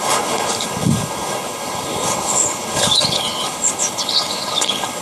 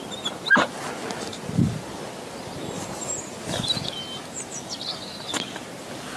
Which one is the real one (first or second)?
second